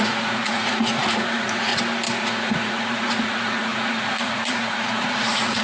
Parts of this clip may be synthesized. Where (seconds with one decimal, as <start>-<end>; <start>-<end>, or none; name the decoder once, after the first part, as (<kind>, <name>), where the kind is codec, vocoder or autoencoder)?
0.0-1.7 (vocoder, Vocos); 2.2-5.6